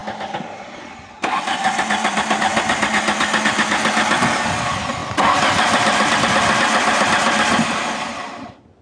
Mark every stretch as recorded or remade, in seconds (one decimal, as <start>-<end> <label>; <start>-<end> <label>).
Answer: 0.0-0.8 recorded; 0.8-2.5 remade; 2.5-3.5 recorded; 3.5-8.8 remade